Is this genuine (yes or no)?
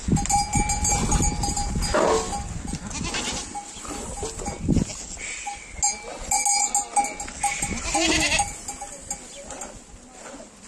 yes